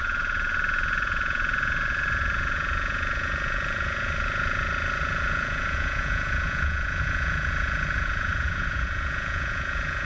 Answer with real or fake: fake